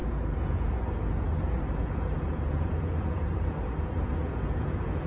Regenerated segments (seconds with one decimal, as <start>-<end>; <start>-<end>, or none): 0.0-5.1